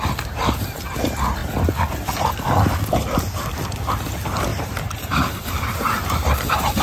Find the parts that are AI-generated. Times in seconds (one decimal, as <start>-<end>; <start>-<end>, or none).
4.5-6.8